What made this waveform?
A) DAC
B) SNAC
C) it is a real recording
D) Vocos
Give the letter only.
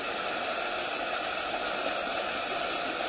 C